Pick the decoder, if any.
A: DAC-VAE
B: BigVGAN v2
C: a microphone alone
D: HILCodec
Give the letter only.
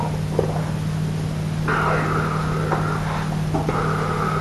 C